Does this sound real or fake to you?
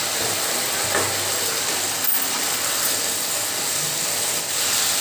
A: real